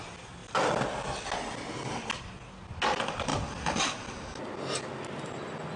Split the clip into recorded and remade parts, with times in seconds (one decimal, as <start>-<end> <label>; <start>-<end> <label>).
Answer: 0.0-5.8 recorded